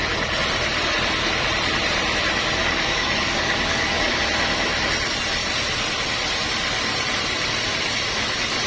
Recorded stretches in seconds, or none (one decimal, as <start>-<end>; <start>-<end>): 0.0-2.6; 4.2-8.7